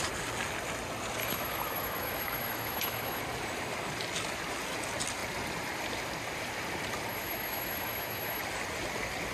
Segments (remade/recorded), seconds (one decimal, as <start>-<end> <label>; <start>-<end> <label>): 0.0-1.2 recorded; 1.2-3.2 remade; 3.2-7.1 recorded; 7.1-8.4 remade; 8.4-9.3 recorded